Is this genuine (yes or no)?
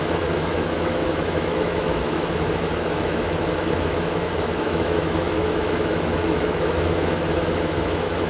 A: no